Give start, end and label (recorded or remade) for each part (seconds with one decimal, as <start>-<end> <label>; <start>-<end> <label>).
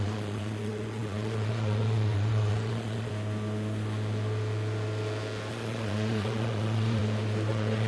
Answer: 0.0-3.1 remade; 3.1-5.5 recorded; 5.5-7.0 remade; 7.0-7.5 recorded; 7.5-7.9 remade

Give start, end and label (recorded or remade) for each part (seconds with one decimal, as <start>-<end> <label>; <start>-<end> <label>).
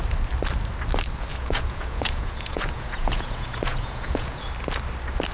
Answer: 0.0-1.3 recorded; 1.3-4.5 remade; 4.5-5.3 recorded